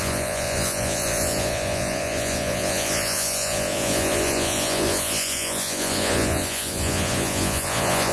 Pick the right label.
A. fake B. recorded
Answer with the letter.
A